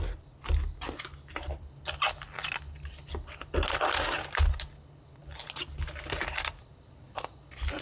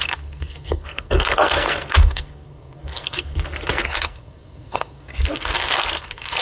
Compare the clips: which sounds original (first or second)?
first